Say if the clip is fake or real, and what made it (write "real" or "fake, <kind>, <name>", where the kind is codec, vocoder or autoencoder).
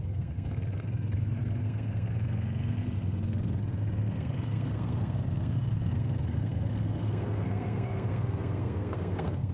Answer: fake, codec, SNAC